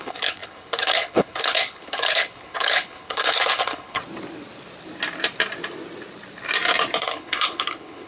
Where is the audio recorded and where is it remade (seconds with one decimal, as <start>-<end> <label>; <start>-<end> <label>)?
0.0-4.0 remade; 4.0-7.0 recorded; 7.0-8.1 remade